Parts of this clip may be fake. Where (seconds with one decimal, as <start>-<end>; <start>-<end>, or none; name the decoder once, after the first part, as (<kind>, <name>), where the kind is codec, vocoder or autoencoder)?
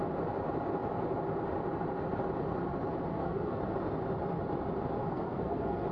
3.1-3.6 (codec, SNAC); 5.0-5.9